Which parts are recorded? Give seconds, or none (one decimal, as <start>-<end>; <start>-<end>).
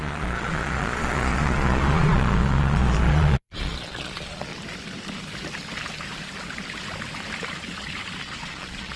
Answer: 4.5-8.2